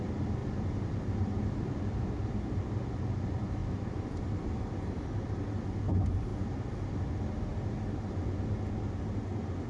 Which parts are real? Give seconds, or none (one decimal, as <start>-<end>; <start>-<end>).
0.0-0.4; 2.1-3.6; 5.4-9.7